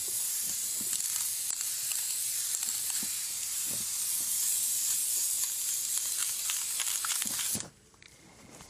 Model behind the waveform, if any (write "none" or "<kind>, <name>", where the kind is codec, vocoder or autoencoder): vocoder, BigVGAN v2